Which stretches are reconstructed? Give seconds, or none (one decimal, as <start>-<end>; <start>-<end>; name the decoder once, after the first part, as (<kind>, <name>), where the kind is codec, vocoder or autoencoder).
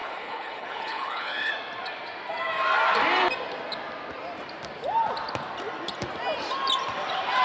0.0-1.5 (codec, HILCodec)